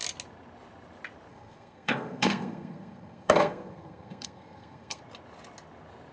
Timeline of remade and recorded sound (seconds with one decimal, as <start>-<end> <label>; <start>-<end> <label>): 0.0-1.3 recorded; 1.3-5.0 remade; 5.0-6.1 recorded